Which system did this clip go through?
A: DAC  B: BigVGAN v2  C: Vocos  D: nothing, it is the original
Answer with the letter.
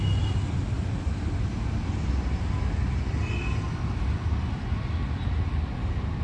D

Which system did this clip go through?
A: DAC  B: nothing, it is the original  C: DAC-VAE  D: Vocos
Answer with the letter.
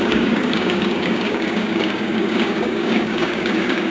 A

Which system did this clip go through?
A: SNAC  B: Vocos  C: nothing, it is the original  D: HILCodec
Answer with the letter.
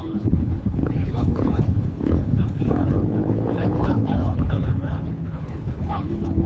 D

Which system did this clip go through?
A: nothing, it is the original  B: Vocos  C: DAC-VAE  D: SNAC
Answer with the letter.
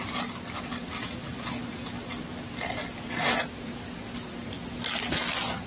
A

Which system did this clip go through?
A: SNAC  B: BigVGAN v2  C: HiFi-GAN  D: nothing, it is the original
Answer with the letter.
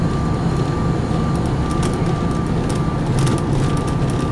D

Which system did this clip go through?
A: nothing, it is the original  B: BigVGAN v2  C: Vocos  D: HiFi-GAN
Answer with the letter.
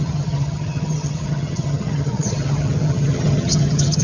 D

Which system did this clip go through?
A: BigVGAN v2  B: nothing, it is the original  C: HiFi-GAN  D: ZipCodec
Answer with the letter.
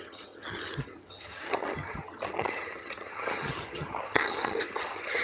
C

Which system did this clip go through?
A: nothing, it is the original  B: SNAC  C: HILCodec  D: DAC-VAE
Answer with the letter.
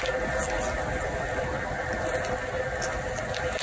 A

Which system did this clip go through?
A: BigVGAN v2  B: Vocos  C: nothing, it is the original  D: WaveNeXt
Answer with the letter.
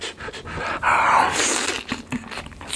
C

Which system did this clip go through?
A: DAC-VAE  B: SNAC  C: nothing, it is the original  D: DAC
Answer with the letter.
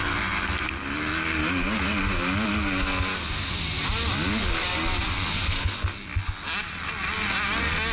C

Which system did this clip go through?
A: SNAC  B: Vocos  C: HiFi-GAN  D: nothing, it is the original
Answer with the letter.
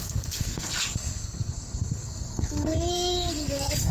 A